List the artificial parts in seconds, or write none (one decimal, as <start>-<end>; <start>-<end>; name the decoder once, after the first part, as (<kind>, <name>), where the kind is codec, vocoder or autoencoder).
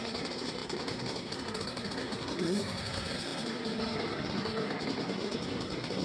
0.0-6.0 (codec, SNAC)